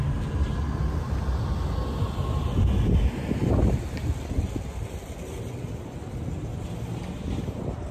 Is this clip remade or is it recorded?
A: recorded